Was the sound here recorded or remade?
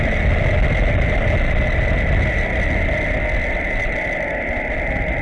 recorded